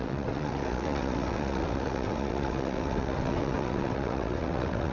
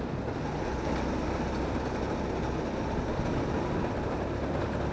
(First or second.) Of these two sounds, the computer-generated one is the first